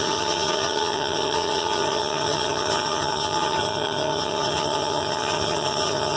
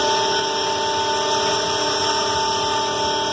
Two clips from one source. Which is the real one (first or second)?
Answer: second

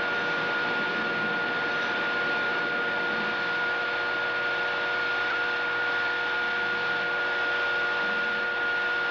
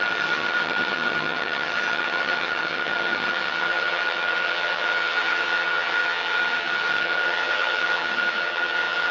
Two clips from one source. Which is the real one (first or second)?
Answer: first